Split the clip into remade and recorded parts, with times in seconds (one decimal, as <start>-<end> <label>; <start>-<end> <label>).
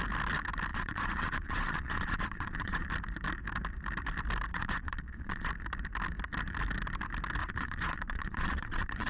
0.0-0.7 recorded; 0.7-2.9 remade; 2.9-4.5 recorded; 4.5-5.5 remade; 5.5-7.4 recorded; 7.4-9.1 remade